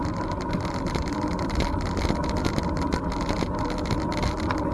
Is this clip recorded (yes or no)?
yes